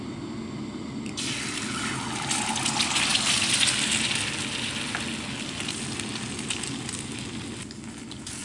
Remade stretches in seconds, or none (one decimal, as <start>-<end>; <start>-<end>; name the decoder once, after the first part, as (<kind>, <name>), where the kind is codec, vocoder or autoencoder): none